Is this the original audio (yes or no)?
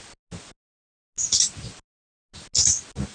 yes